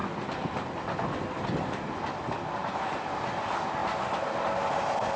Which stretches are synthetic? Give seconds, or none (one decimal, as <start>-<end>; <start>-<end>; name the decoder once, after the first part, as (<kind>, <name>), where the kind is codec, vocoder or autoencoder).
2.6-3.3 (vocoder, BigVGAN v2)